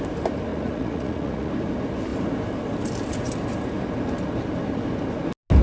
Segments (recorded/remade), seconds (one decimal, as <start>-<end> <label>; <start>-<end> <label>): 0.0-0.5 recorded; 0.5-1.5 remade; 1.5-5.6 recorded

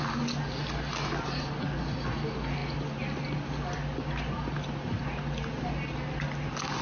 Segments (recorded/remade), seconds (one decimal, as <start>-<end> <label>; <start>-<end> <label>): 0.0-6.8 recorded

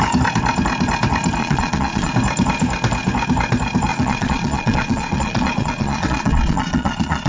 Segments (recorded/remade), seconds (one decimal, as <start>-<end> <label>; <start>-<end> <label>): 0.0-1.4 recorded; 1.4-2.1 remade; 2.1-3.9 recorded; 3.9-7.3 remade

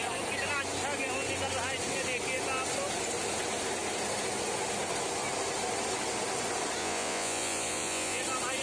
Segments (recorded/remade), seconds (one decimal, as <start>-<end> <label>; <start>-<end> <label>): 0.0-6.8 recorded; 6.8-8.2 remade; 8.2-8.6 recorded

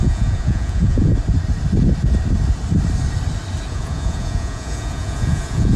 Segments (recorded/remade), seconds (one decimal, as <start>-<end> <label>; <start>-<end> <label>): 0.0-1.1 remade; 1.1-3.7 recorded; 3.7-5.8 remade